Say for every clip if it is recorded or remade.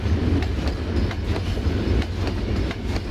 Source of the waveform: recorded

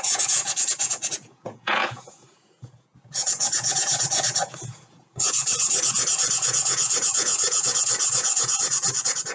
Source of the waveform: remade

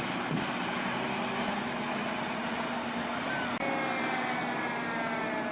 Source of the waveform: recorded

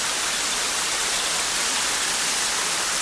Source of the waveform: recorded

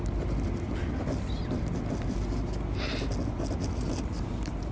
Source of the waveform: recorded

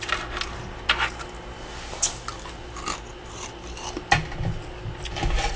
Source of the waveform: recorded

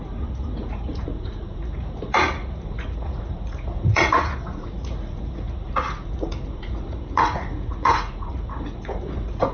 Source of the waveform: remade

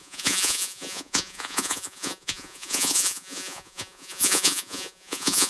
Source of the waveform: remade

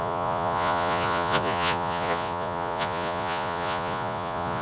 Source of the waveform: remade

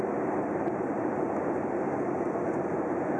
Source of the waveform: recorded